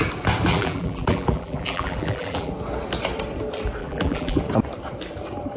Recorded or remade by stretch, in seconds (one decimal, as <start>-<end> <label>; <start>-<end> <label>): 0.0-0.5 recorded; 0.5-2.5 remade; 2.5-3.8 recorded; 3.8-4.4 remade; 4.4-5.6 recorded